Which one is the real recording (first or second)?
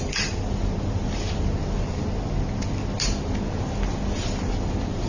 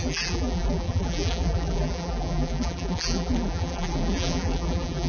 first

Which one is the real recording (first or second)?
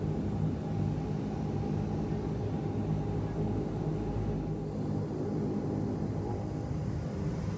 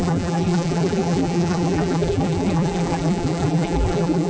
first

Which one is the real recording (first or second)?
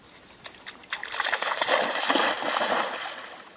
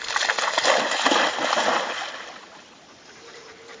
first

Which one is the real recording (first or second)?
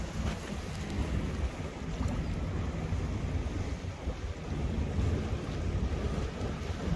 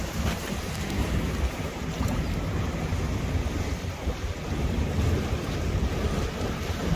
first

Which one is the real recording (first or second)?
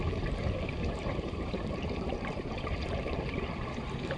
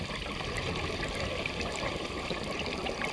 second